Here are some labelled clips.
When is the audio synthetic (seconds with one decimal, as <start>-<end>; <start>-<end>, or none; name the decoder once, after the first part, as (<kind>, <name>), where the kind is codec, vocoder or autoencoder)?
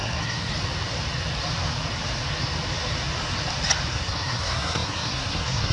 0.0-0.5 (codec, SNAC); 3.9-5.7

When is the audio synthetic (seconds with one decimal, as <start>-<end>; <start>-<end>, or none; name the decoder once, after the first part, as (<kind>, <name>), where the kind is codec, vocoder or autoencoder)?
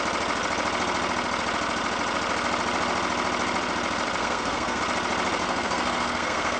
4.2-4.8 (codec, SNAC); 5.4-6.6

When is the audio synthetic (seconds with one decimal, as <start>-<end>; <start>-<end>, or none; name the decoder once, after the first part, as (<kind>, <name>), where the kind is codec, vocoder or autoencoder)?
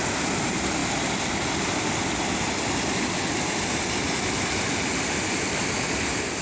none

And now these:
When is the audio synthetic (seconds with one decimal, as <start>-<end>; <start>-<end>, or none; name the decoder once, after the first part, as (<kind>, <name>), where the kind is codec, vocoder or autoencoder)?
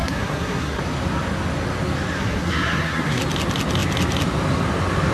0.0-0.8 (codec, SNAC); 2.2-3.2